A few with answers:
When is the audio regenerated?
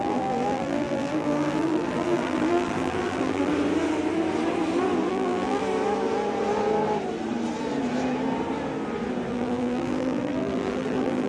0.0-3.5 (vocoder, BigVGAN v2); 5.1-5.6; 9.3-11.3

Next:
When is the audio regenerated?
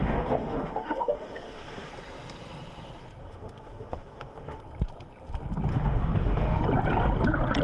0.0-1.9 (autoencoder, DAC-VAE); 3.2-4.6; 5.7-6.6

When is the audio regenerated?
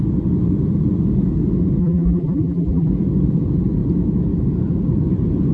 1.8-2.9 (vocoder, BigVGAN v2)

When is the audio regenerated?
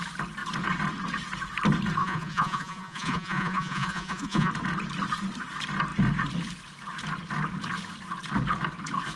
2.0-4.5 (vocoder, Vocos)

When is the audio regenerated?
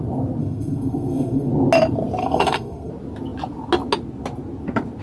0.4-1.5 (codec, SNAC); 2.2-2.9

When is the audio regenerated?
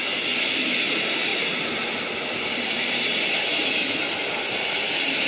none